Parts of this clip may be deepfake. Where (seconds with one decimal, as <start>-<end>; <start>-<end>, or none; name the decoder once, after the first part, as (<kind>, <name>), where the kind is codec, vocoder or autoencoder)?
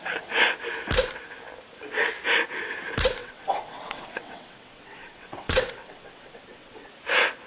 3.2-6.9 (vocoder, WaveNeXt)